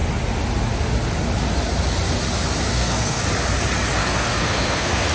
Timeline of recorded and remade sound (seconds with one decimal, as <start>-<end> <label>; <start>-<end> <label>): 0.0-2.7 recorded; 2.7-3.2 remade; 3.2-4.0 recorded; 4.0-5.1 remade

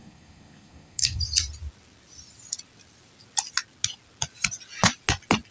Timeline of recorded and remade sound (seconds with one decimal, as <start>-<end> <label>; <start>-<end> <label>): 0.0-1.2 remade; 1.2-5.5 recorded

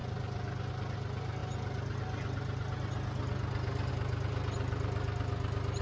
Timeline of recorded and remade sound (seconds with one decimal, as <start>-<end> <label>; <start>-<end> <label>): 0.0-5.8 recorded